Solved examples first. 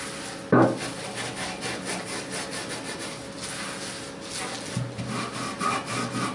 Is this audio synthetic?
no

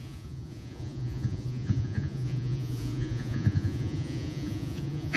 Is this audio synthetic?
yes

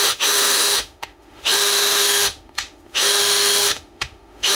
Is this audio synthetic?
yes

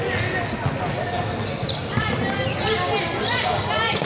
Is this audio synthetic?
no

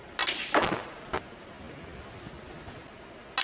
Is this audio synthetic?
no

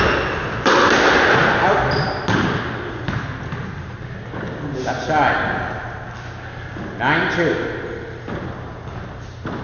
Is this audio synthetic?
no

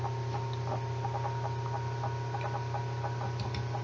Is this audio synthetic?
no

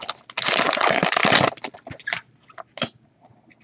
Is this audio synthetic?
no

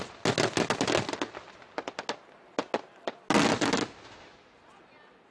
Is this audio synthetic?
no